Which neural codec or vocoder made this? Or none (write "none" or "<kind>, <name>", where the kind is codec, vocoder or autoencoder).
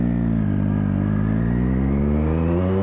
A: none